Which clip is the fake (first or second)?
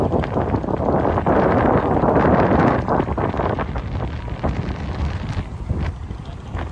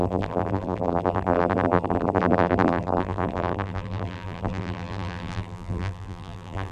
second